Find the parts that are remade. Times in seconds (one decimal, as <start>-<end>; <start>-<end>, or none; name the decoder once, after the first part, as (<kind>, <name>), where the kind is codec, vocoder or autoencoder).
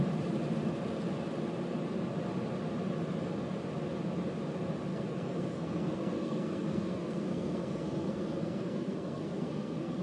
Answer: 4.9-10.0 (codec, SNAC)